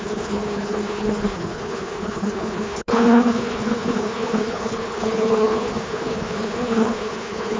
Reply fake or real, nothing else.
fake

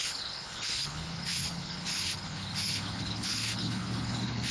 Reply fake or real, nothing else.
fake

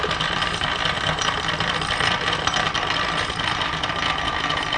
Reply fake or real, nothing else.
real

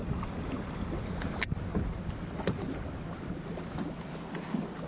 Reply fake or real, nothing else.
real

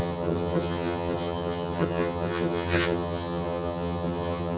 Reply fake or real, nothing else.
fake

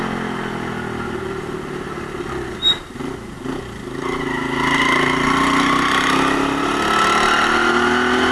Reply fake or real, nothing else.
real